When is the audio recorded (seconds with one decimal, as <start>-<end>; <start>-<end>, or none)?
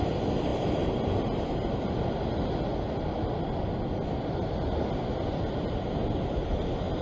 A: 0.0-7.0